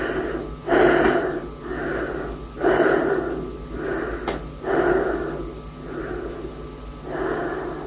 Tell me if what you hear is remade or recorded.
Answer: recorded